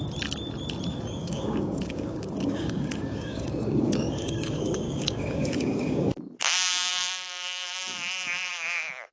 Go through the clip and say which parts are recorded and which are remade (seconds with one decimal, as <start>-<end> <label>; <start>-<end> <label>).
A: 0.0-1.2 recorded; 1.2-6.1 remade; 6.1-6.9 recorded; 6.9-8.5 remade; 8.5-9.1 recorded